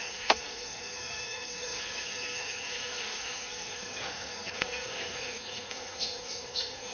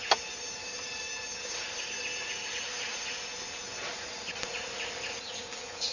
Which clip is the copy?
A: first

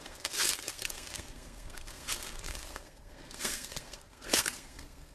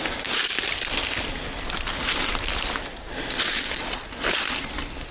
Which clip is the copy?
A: first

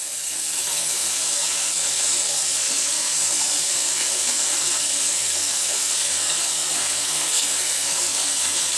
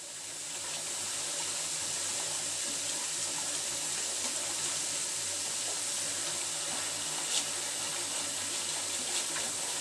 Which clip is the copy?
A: first